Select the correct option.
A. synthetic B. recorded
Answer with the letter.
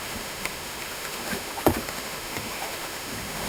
A